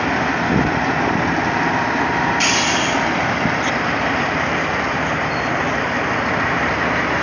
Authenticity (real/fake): real